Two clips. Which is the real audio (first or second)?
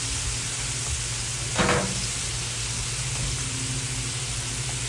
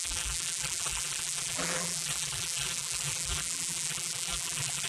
first